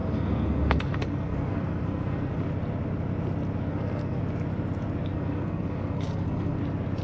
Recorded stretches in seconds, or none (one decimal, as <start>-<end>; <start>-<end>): 2.4-3.7; 4.2-5.1; 6.6-7.0